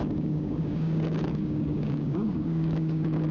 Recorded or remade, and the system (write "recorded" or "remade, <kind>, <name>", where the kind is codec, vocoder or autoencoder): remade, codec, DAC